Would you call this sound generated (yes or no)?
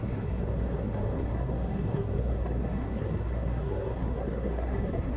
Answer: yes